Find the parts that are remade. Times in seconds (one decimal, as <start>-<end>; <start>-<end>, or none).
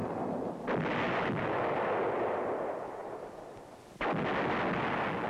3.0-3.8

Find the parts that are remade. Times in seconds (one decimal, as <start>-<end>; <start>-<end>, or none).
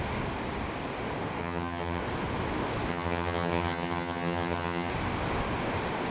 1.4-2.0; 2.9-4.9